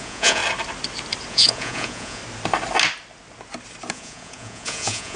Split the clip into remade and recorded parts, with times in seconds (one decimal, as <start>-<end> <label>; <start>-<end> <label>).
0.0-0.4 remade; 0.4-1.3 recorded; 1.3-2.2 remade; 2.2-3.9 recorded; 3.9-5.2 remade